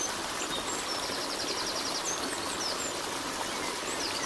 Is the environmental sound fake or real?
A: real